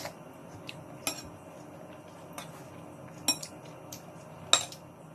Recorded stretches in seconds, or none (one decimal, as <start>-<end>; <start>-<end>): 0.0-5.1